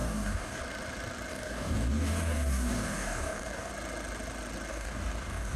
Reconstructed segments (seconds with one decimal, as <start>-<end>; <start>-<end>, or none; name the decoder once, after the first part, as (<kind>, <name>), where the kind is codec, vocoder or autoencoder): 0.0-0.6 (codec, DAC); 1.3-3.7; 4.7-5.6